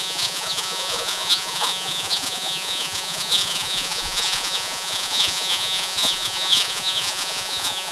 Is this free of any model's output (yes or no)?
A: no